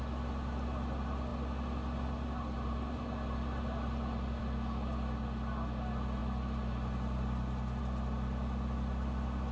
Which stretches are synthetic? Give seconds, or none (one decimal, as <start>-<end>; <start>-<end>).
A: none